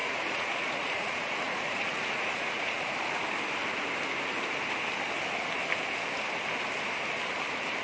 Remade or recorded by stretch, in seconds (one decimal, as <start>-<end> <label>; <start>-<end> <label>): 0.0-2.9 remade; 2.9-7.8 recorded